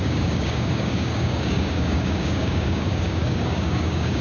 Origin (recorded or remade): remade